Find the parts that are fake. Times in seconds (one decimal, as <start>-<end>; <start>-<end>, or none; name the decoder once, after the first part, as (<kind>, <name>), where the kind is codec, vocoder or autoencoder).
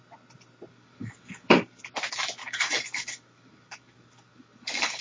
0.7-1.8 (codec, DAC); 2.4-5.0